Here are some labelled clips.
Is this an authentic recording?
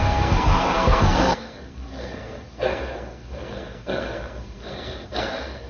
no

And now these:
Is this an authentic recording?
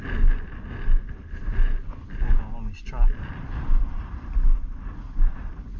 yes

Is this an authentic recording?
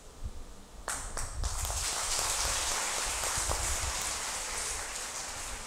yes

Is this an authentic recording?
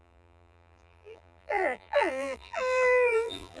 no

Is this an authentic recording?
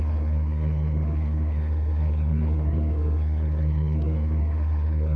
no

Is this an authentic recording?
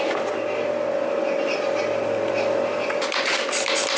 yes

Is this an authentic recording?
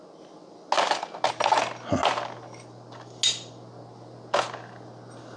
yes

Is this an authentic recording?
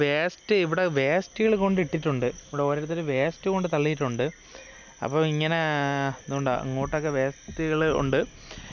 yes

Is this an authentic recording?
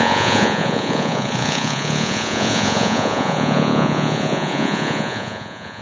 no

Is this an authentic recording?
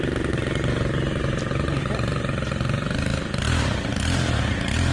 yes